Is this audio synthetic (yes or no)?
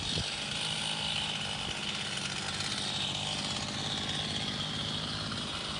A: no